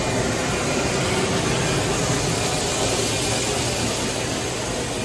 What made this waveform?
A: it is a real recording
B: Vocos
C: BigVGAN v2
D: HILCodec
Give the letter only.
A